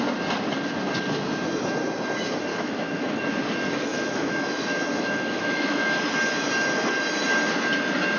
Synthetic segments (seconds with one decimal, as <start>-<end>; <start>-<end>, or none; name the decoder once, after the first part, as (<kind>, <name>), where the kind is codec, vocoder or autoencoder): 2.5-3.2 (autoencoder, DAC-VAE); 3.9-6.0